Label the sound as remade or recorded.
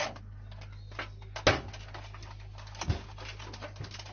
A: recorded